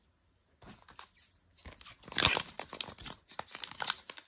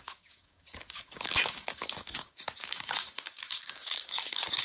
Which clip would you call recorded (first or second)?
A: first